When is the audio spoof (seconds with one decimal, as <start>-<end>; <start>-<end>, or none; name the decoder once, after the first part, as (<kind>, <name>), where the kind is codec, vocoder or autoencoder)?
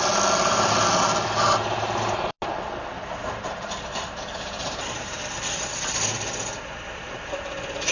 3.2-5.2 (vocoder, BigVGAN v2)